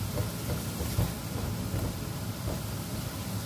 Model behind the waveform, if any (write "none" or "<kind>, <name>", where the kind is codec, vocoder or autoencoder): none